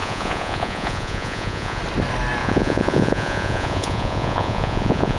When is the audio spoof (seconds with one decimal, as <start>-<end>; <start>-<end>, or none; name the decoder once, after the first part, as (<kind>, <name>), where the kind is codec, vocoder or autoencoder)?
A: 0.0-1.8 (vocoder, Vocos); 2.4-5.2